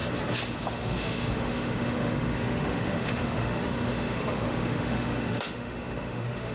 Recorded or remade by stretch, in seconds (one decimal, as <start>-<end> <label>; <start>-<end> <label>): 0.0-0.7 recorded; 0.7-6.5 remade